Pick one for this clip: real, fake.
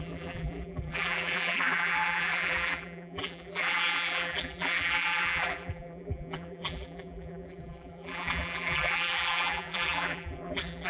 fake